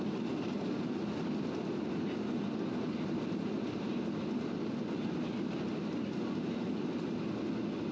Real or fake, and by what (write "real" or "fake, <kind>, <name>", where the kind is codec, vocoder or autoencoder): real